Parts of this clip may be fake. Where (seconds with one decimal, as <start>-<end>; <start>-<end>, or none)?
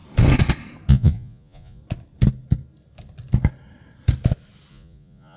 0.9-1.8; 4.7-5.4